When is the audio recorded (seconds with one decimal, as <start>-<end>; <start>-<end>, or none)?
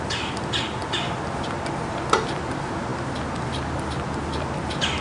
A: 0.0-5.0